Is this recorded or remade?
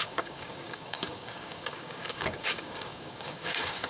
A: remade